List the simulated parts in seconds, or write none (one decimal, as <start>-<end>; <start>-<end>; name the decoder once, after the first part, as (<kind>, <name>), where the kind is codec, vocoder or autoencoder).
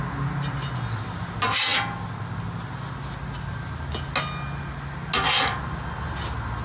none